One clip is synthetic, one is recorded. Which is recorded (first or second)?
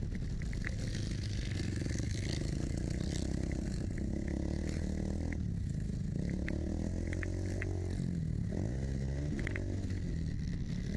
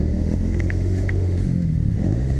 first